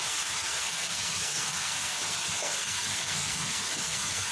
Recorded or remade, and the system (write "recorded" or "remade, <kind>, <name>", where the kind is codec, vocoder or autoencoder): remade, codec, SNAC